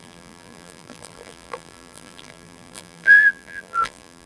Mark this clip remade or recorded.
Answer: remade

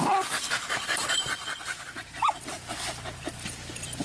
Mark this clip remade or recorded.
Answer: remade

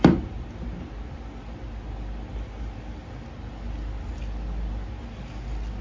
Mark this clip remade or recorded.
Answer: recorded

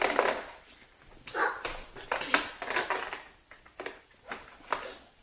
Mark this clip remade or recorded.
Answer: recorded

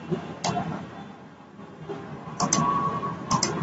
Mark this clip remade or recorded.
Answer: recorded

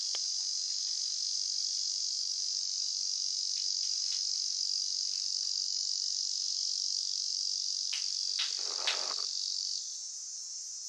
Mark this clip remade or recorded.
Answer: remade